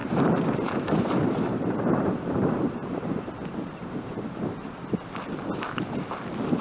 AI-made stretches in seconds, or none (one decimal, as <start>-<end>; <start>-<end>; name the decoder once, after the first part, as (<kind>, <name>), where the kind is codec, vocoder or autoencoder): 0.0-3.3 (vocoder, BigVGAN v2); 3.8-4.4